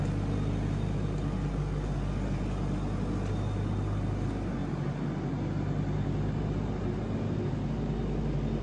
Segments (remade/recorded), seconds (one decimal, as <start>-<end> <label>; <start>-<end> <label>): 0.0-8.6 recorded